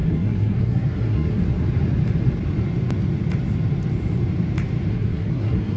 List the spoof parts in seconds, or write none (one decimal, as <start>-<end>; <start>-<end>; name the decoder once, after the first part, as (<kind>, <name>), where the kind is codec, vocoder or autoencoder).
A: 0.0-1.4 (codec, SNAC); 4.9-5.8